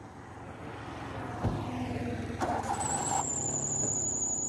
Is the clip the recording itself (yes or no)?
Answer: yes